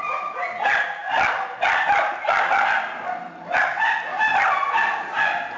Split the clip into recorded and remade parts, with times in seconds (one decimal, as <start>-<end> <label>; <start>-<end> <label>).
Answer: 0.0-5.6 recorded